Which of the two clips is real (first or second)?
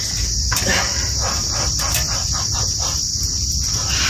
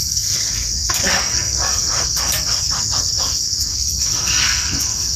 first